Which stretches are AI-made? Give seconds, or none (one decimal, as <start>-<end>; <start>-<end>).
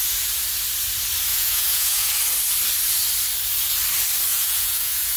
1.3-2.1; 4.3-5.2